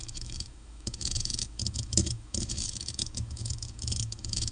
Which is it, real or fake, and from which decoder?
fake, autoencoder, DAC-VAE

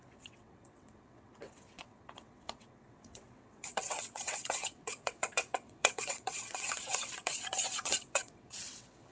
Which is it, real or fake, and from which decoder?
fake, vocoder, WaveNeXt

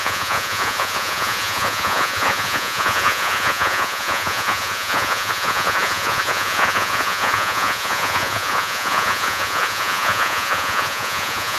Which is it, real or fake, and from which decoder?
fake, vocoder, Vocos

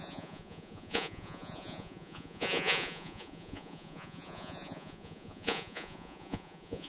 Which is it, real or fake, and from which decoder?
fake, vocoder, Vocos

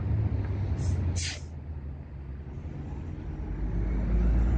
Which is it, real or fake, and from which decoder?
real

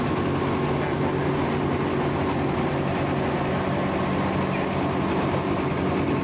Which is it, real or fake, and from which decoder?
real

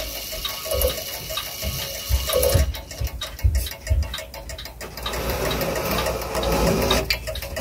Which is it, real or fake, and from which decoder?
real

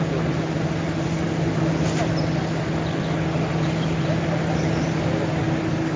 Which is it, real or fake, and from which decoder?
real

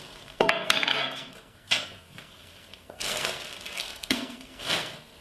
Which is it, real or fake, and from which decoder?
fake, codec, SNAC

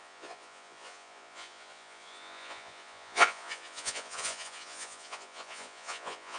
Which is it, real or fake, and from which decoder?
fake, vocoder, Vocos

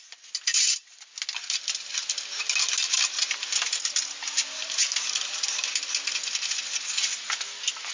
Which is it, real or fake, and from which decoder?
real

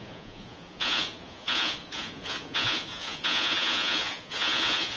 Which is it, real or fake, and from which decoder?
fake, vocoder, Vocos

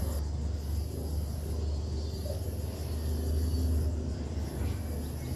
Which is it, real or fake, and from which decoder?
real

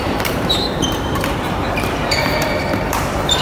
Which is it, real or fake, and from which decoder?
fake, vocoder, BigVGAN v2